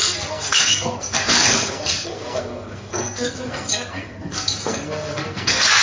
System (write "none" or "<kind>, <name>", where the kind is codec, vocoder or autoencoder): codec, SNAC